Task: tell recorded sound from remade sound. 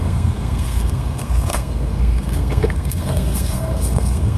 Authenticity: remade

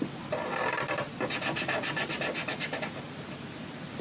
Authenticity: recorded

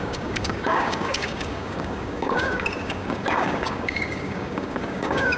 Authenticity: remade